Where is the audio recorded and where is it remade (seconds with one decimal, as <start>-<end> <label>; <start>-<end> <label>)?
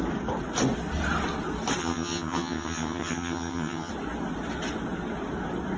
0.0-1.8 recorded; 1.8-3.9 remade; 3.9-5.8 recorded